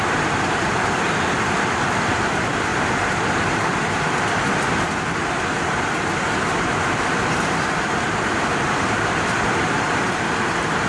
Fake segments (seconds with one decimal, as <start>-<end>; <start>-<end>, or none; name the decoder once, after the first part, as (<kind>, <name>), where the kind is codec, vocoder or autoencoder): 0.0-2.7 (vocoder, BigVGAN v2); 6.5-10.9

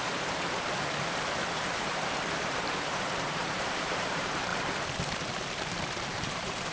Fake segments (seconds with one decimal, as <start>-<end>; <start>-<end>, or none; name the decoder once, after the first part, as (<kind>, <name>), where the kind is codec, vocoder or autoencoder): 0.0-4.5 (vocoder, BigVGAN v2); 5.5-6.7

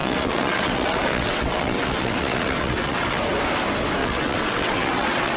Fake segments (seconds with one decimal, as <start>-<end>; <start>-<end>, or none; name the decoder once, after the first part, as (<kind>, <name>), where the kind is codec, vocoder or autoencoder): 0.0-3.2 (vocoder, WaveNeXt); 4.0-5.4

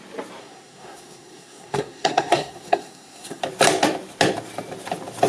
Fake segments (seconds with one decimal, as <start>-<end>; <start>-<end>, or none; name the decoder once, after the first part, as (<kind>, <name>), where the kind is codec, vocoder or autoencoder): 0.4-3.4 (codec, SNAC)